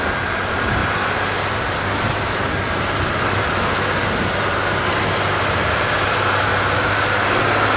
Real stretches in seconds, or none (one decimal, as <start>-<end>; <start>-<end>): 0.8-3.7; 6.5-7.8